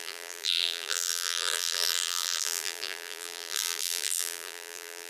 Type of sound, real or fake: fake